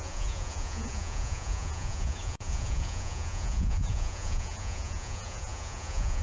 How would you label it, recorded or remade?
remade